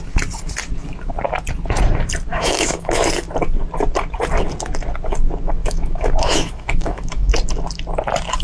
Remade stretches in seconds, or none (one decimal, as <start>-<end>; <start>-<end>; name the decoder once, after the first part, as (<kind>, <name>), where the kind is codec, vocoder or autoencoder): 2.3-3.0 (autoencoder, DAC-VAE); 5.6-7.3